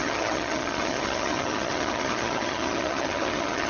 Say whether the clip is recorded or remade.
remade